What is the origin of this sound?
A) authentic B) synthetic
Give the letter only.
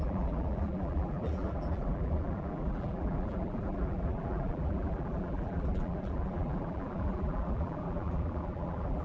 B